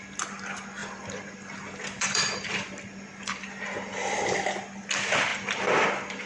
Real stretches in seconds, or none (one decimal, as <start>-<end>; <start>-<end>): 0.0-0.8; 4.4-5.3